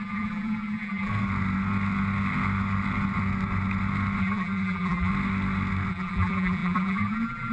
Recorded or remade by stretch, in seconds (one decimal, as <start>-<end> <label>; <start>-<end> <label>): 0.0-1.1 remade; 1.1-4.2 recorded; 4.2-5.1 remade; 5.1-5.9 recorded; 5.9-7.5 remade

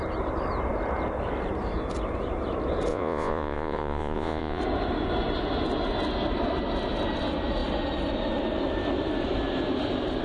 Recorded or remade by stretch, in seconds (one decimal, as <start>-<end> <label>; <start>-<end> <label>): 0.0-2.9 recorded; 2.9-4.6 remade; 4.6-10.2 recorded